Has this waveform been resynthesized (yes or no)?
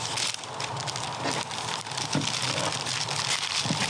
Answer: no